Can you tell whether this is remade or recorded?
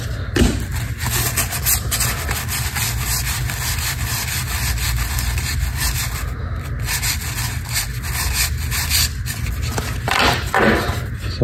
recorded